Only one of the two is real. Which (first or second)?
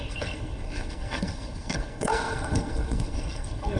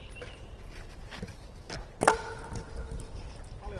second